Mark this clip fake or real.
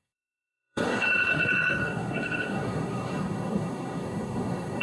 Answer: fake